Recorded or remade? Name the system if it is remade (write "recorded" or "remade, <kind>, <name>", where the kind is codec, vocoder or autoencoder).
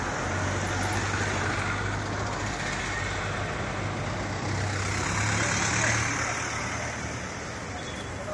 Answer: recorded